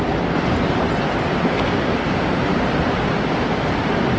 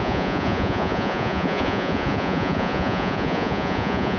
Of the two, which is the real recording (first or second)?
first